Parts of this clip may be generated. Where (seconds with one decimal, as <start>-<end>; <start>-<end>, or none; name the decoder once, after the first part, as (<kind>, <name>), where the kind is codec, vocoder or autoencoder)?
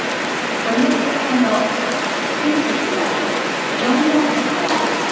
0.8-1.6 (vocoder, Vocos); 2.5-4.2